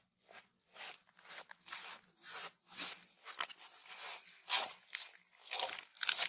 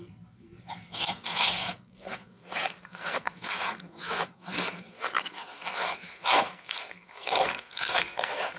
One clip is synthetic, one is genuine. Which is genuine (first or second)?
first